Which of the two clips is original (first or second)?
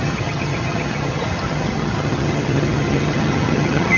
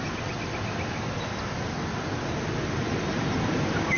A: second